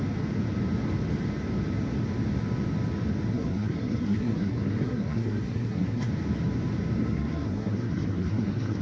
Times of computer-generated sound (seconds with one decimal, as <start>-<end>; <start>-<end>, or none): 3.3-6.1; 7.0-8.8

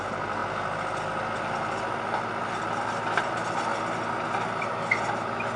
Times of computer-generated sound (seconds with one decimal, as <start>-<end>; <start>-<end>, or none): none